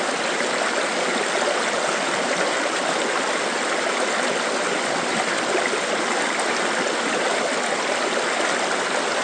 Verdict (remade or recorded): recorded